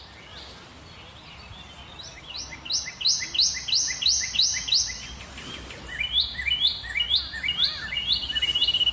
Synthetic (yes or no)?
no